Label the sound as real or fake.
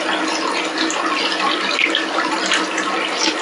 real